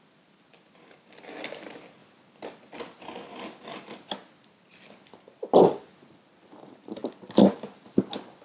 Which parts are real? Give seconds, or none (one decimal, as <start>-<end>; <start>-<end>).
0.0-8.4